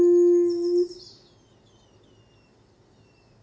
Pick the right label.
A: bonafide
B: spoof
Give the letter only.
A